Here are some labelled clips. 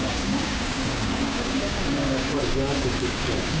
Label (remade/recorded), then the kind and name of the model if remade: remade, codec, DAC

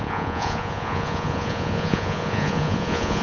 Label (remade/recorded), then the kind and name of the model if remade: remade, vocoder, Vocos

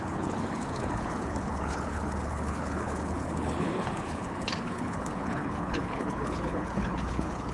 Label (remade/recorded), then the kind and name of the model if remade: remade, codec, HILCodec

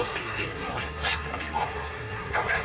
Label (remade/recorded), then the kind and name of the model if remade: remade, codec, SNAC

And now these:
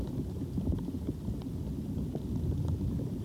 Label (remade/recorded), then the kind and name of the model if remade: remade, vocoder, BigVGAN v2